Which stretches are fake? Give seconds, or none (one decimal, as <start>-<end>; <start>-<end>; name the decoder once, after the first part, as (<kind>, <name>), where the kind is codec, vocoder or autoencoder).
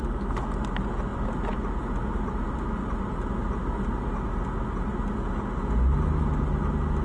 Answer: none